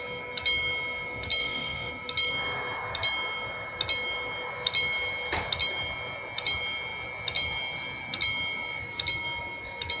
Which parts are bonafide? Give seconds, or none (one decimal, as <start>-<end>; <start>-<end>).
0.0-1.4; 1.9-10.0